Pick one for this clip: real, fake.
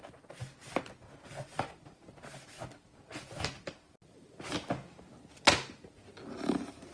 real